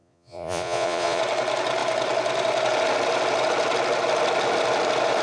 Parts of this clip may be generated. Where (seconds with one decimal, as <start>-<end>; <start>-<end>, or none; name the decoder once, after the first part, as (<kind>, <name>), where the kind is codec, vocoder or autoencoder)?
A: 0.0-1.2 (vocoder, Vocos)